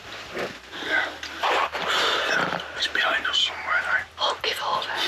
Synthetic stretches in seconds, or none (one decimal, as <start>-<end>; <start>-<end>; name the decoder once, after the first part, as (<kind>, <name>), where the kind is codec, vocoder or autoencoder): 1.0-4.1 (vocoder, BigVGAN v2)

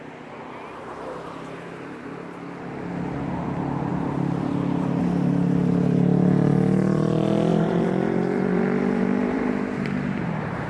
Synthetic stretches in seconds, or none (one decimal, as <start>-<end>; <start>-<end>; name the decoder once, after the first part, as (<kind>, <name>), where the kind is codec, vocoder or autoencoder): 3.9-5.0 (vocoder, BigVGAN v2); 7.5-9.5

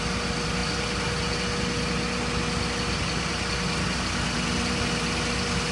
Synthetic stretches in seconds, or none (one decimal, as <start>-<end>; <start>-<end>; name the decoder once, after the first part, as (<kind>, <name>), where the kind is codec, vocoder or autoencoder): none

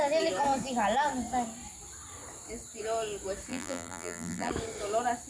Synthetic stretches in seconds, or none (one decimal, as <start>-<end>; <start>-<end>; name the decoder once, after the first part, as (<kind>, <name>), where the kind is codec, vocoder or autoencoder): 3.5-4.5 (vocoder, BigVGAN v2)

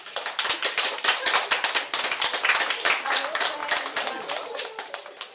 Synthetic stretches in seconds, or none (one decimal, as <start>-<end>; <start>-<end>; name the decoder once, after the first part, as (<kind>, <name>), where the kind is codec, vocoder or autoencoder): none